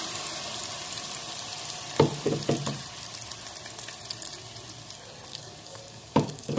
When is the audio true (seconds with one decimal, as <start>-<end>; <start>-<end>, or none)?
0.0-5.3